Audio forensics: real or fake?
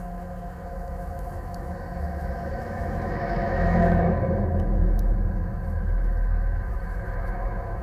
fake